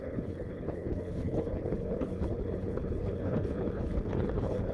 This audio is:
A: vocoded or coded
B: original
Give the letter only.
A